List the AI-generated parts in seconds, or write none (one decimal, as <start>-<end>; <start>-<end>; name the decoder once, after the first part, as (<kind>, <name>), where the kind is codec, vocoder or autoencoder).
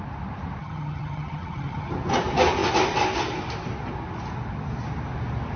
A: 0.6-1.9 (vocoder, HiFi-GAN)